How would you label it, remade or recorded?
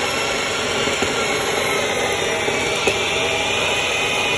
recorded